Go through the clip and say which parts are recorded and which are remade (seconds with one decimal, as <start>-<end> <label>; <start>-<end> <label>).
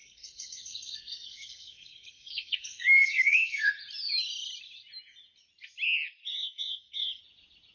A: 0.0-3.7 remade; 3.7-6.3 recorded; 6.3-7.2 remade; 7.2-7.7 recorded